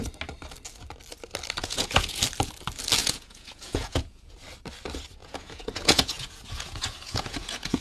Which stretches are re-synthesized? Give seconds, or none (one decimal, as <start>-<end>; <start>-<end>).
1.6-2.2; 3.0-4.3; 5.2-7.8